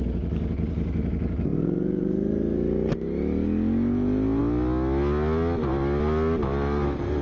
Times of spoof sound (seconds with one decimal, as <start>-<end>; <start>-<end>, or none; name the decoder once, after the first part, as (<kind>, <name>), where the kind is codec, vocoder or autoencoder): none